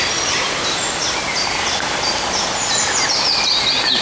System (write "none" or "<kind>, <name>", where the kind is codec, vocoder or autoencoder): none